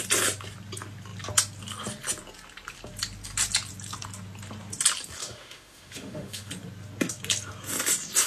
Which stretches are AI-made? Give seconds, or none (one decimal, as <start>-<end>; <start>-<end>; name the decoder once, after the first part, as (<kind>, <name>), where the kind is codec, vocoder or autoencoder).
5.2-6.5 (autoencoder, DAC-VAE)